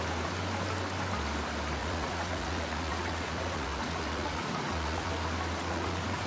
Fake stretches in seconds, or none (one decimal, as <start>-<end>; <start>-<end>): 1.8-5.1; 5.6-6.3

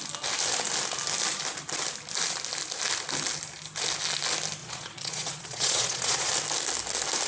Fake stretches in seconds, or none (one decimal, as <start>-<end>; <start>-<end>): 4.6-6.3

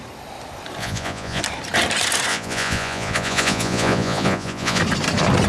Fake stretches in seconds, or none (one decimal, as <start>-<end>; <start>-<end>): 0.8-1.4; 2.3-4.8